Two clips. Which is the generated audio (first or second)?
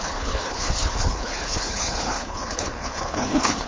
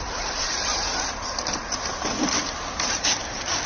first